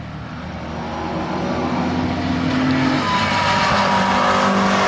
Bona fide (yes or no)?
yes